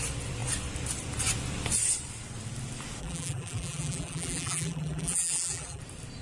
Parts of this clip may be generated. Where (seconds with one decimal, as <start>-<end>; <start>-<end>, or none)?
3.0-5.8